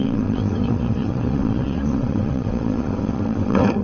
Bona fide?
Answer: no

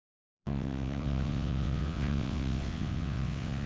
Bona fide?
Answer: no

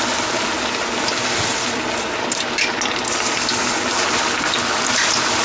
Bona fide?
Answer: yes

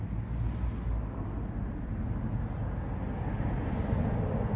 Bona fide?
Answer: yes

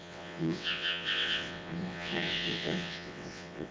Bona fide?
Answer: no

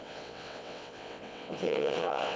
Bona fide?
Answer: no